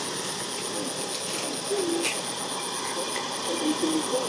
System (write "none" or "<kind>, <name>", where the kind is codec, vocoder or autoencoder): none